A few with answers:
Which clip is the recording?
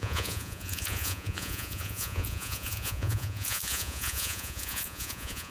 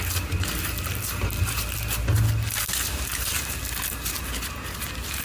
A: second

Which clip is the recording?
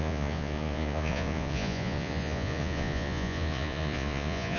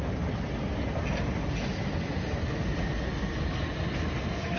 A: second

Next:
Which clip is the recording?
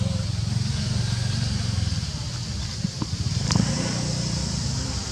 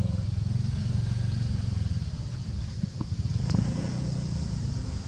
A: first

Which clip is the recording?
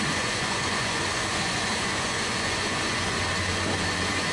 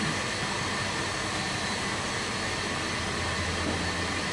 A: second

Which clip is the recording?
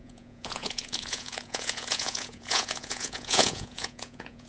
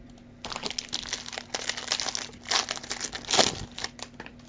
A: second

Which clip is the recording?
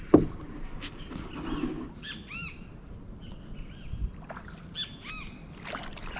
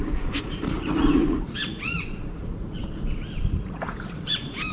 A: first